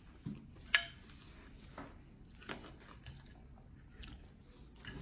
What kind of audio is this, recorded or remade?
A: recorded